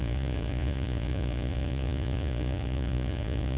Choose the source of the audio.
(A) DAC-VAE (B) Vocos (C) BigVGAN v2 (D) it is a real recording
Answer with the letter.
B